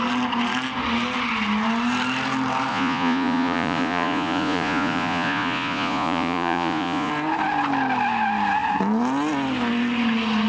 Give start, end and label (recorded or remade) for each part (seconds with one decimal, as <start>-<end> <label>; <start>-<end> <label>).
0.0-2.7 recorded; 2.7-7.1 remade; 7.1-10.5 recorded